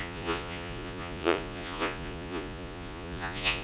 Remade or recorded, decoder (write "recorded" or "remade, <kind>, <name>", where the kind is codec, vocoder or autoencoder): remade, vocoder, Vocos